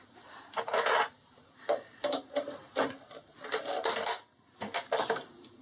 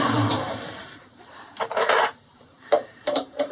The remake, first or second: second